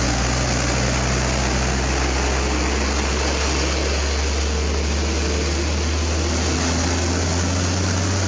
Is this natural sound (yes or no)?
yes